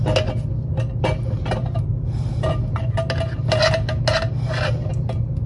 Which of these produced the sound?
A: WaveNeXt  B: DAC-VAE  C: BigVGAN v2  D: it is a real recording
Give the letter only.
D